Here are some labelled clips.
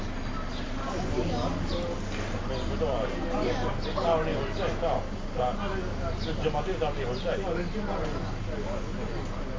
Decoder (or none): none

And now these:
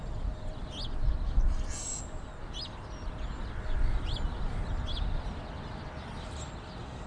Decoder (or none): none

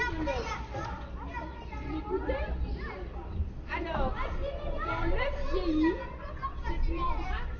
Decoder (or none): none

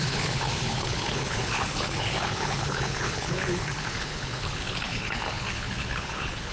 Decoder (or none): codec, HILCodec